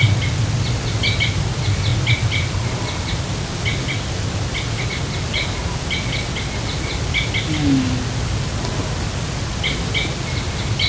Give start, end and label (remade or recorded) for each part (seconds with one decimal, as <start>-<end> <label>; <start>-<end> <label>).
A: 0.0-10.9 recorded